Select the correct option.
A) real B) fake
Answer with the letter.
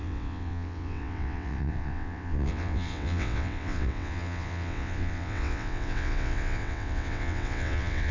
B